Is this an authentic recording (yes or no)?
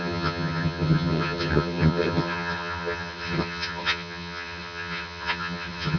no